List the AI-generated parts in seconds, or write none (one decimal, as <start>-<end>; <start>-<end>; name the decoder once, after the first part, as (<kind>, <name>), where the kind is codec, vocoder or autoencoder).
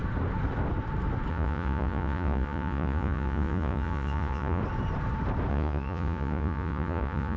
1.3-4.6 (vocoder, Vocos); 5.5-7.4